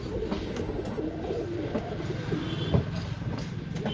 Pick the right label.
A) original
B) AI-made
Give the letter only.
A